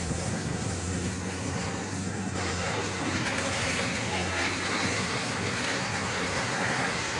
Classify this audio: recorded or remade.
remade